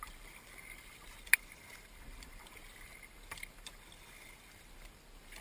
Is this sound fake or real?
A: real